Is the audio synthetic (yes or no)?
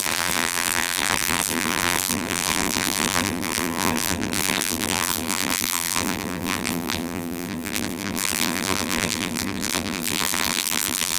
yes